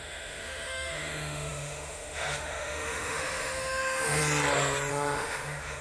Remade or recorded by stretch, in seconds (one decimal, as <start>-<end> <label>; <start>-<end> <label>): 0.0-4.2 remade; 4.2-4.9 recorded; 4.9-5.8 remade